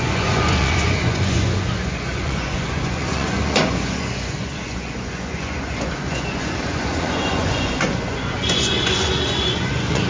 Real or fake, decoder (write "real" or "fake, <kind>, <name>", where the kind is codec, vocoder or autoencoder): fake, vocoder, Vocos